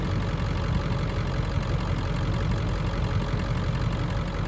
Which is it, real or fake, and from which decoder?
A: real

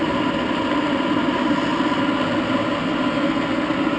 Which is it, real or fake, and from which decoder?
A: real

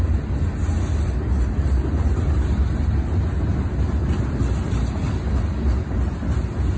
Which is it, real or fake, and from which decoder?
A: real